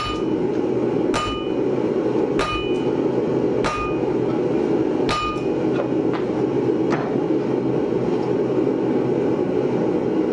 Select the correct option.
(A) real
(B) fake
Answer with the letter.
A